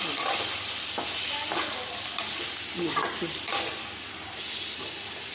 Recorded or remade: recorded